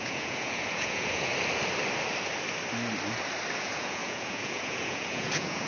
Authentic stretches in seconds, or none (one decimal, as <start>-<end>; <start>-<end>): 1.3-3.6